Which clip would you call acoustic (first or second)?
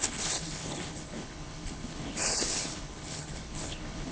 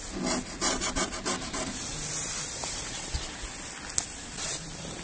second